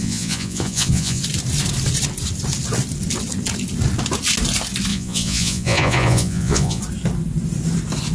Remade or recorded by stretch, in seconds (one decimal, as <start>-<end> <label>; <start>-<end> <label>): 0.0-1.2 remade; 1.2-4.9 recorded; 4.9-6.8 remade; 6.8-8.1 recorded